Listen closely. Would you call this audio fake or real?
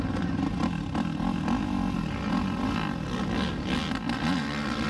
real